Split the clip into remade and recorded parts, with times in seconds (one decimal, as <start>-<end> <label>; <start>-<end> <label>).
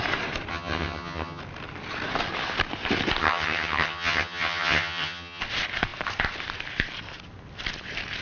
0.0-0.5 recorded; 0.5-1.4 remade; 1.4-3.2 recorded; 3.2-5.4 remade; 5.4-8.2 recorded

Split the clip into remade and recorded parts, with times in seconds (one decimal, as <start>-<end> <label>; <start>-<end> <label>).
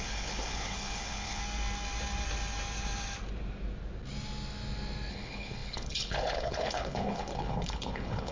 0.0-1.4 remade; 1.4-5.1 recorded; 5.1-8.3 remade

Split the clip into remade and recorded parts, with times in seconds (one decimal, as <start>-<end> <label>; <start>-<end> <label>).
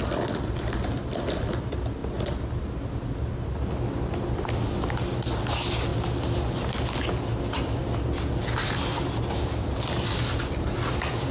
0.0-11.3 recorded